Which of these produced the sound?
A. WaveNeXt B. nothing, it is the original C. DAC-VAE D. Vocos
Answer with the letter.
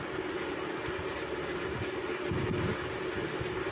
B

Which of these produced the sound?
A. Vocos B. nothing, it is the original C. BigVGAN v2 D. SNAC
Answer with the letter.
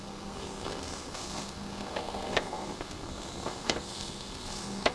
D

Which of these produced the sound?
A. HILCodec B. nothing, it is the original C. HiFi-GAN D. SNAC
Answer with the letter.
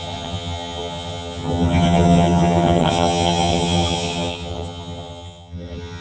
C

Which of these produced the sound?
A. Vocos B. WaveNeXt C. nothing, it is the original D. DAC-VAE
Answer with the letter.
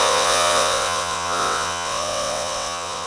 B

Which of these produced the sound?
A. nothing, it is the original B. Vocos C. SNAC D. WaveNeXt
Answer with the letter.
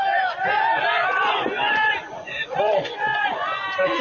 B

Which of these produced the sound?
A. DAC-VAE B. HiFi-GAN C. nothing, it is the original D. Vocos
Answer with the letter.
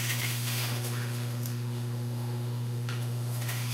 A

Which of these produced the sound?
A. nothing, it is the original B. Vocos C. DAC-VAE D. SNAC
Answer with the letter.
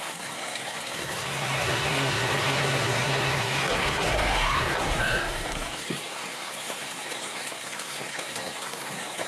D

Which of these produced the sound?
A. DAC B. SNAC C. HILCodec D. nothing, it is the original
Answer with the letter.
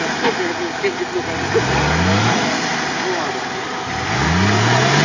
D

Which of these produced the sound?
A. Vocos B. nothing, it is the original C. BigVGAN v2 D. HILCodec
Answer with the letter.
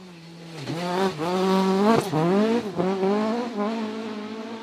B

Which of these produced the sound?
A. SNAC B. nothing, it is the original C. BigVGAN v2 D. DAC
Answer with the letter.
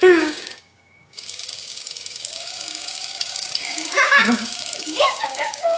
D